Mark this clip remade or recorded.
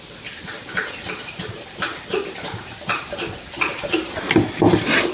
recorded